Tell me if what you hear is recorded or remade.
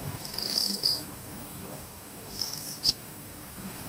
remade